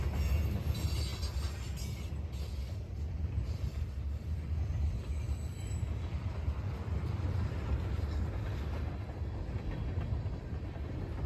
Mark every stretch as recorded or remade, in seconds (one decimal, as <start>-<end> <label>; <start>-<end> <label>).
0.0-2.6 recorded; 2.6-5.5 remade; 5.5-6.1 recorded; 6.1-7.6 remade; 7.6-11.3 recorded